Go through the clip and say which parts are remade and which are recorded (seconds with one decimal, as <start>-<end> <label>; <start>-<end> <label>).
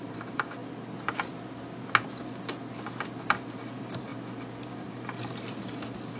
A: 0.0-0.6 remade; 0.6-3.2 recorded; 3.2-4.1 remade; 4.1-4.7 recorded; 4.7-6.2 remade